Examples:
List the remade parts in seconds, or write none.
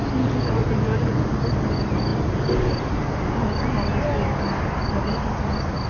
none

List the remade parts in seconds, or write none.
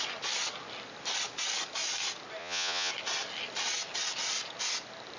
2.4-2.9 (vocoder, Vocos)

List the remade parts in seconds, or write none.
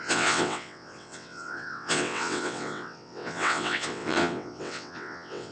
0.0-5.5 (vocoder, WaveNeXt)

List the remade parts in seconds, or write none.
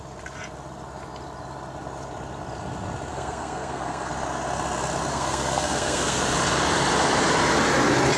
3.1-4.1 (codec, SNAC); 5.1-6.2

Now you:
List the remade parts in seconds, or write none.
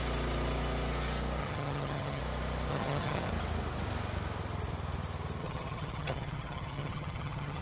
1.4-2.2 (vocoder, HiFi-GAN); 2.7-3.3; 5.4-7.6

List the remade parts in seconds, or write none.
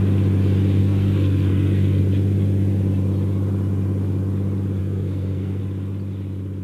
0.8-2.0 (codec, SNAC); 4.8-5.6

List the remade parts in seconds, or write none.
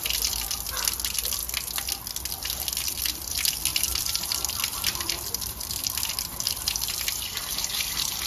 3.7-6.9 (vocoder, BigVGAN v2)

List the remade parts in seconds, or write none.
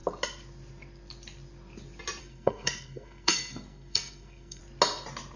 2.2-4.6 (codec, SNAC)